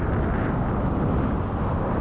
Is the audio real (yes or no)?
yes